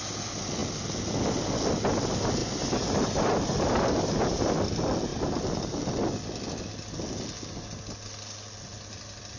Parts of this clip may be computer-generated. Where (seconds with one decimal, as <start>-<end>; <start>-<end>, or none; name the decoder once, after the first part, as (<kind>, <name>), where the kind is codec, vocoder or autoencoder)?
2.4-4.6 (vocoder, BigVGAN v2)